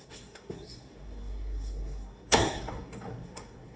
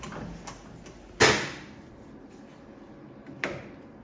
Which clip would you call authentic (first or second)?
second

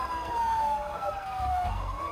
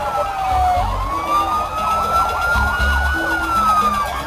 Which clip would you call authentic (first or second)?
second